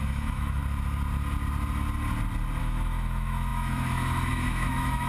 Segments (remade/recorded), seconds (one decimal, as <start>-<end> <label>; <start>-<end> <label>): 0.0-0.6 remade; 0.6-2.6 recorded; 2.6-5.1 remade